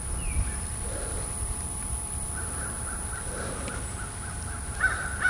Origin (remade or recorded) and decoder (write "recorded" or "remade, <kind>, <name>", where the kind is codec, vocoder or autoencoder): remade, vocoder, BigVGAN v2